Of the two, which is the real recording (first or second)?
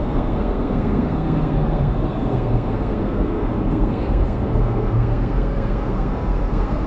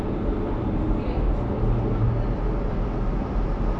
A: second